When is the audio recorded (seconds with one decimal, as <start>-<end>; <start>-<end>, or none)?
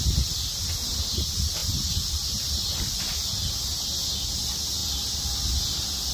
0.0-6.1